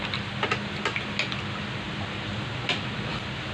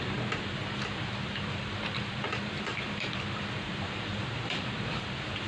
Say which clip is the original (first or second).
first